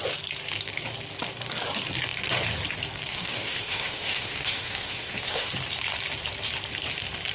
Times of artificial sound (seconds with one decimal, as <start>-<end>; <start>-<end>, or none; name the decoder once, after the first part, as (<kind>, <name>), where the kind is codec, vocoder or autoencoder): 3.1-5.5 (autoencoder, DAC-VAE)